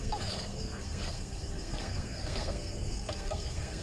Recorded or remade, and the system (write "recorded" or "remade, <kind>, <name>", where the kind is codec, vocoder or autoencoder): remade, codec, SNAC